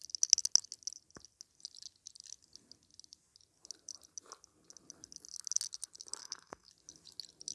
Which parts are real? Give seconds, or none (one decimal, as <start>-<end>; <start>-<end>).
0.0-6.2; 6.7-7.5